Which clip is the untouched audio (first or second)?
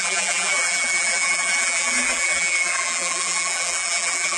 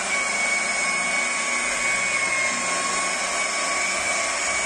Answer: second